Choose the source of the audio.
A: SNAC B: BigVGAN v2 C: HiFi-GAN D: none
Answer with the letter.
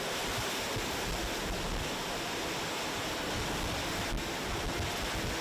D